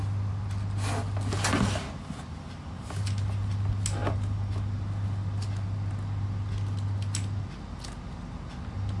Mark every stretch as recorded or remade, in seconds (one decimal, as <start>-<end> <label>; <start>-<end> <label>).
0.0-9.0 recorded